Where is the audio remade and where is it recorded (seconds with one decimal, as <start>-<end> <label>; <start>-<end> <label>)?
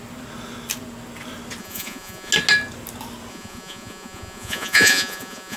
0.0-1.6 recorded; 1.6-2.3 remade; 2.3-3.3 recorded; 3.3-5.6 remade